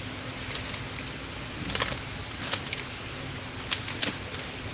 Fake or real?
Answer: real